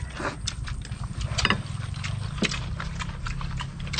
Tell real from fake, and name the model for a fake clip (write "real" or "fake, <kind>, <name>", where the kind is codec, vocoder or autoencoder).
real